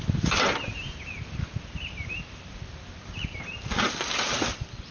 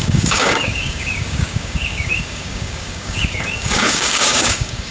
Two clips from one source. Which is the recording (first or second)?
first